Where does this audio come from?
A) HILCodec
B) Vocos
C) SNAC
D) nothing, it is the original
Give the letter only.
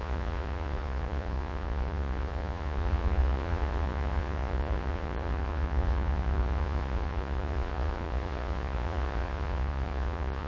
B